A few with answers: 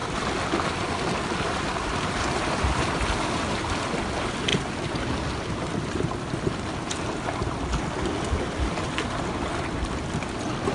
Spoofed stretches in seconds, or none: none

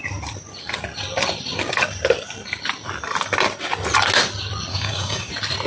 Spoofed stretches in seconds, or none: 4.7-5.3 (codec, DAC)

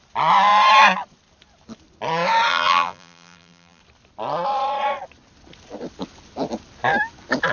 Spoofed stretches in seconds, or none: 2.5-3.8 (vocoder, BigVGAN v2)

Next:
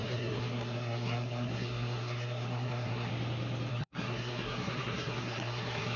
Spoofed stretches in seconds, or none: 0.0-3.1 (codec, SNAC); 3.7-6.0

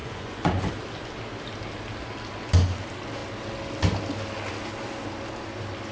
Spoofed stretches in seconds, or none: 0.0-0.7 (vocoder, Vocos)

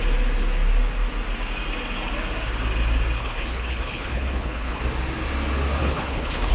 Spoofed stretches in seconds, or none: 3.2-4.8 (codec, HILCodec); 5.8-6.5

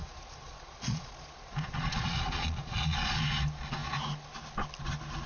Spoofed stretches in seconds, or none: 0.0-3.2 (vocoder, Vocos)

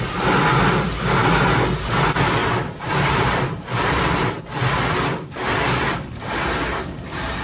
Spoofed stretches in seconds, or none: 2.4-4.4 (vocoder, BigVGAN v2)